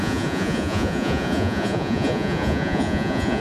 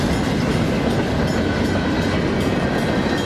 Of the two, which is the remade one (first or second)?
first